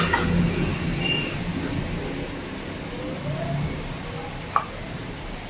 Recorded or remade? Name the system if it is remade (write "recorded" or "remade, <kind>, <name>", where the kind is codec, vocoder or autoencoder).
recorded